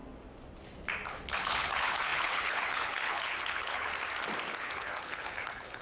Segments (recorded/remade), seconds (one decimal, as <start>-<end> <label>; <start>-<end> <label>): 0.0-1.1 recorded; 1.1-3.9 remade; 3.9-4.6 recorded; 4.6-5.8 remade